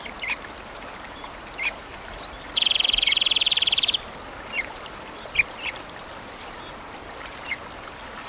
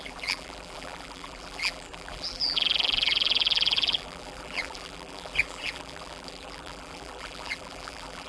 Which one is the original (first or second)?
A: first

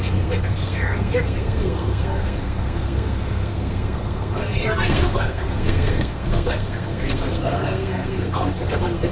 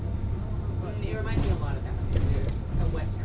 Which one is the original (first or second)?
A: second